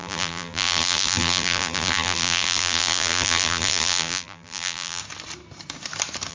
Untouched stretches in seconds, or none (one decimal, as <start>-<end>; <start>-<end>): 5.0-6.3